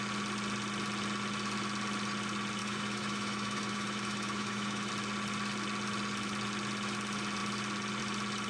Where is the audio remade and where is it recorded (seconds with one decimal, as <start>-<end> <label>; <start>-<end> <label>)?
0.0-2.6 recorded; 2.6-4.9 remade; 4.9-8.5 recorded